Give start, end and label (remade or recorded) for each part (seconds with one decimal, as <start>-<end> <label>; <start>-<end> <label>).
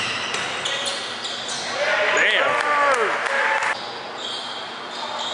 0.0-5.3 recorded